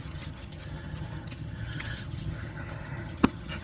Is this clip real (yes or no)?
no